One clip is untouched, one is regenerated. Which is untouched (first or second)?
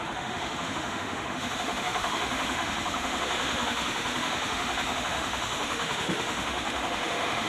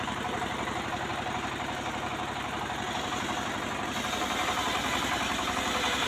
second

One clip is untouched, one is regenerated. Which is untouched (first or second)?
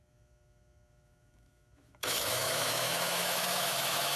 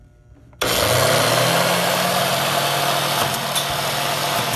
second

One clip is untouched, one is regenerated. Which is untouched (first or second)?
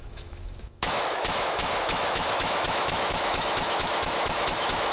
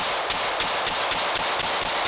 second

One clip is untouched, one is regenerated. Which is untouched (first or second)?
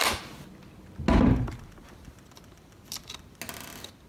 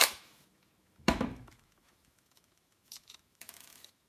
first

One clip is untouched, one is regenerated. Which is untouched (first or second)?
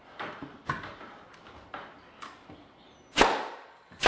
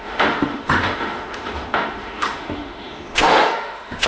first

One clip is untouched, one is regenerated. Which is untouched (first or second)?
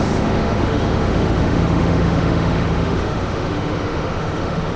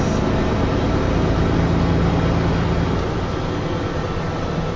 second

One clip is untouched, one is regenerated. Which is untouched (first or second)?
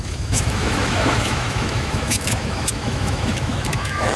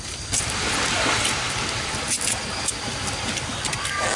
second